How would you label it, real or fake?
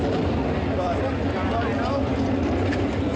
real